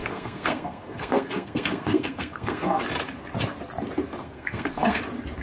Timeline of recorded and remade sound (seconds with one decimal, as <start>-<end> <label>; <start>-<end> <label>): 0.0-2.8 remade; 2.8-4.2 recorded; 4.2-5.0 remade; 5.0-5.4 recorded